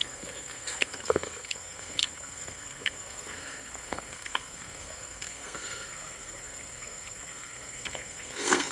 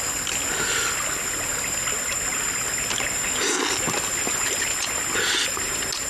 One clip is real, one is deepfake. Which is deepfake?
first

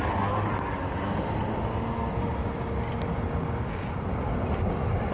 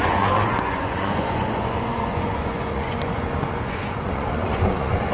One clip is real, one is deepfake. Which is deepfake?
second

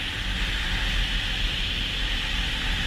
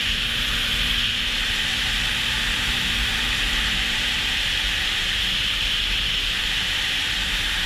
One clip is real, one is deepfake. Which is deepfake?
second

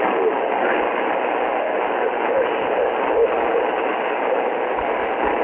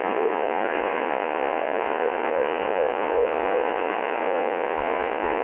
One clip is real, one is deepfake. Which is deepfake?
second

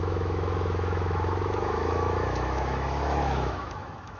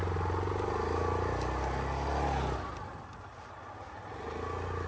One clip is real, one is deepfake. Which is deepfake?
first